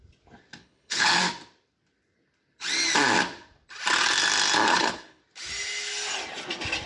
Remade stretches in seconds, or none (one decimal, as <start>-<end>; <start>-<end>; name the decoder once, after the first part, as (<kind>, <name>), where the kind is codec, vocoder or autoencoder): 0.6-1.2 (codec, HILCodec); 4.7-5.2

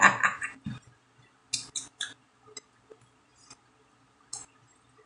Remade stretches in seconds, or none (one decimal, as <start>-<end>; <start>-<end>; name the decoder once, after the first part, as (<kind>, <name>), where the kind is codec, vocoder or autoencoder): none

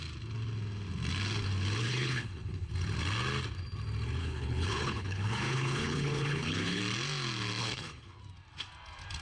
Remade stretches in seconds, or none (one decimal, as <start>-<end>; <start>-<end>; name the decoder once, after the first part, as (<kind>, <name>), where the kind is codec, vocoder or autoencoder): 1.8-2.7 (codec, HILCodec); 4.2-6.8; 7.6-8.2